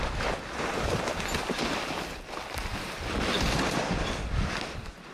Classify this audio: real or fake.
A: real